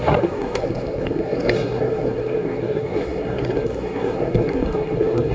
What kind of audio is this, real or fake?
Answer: fake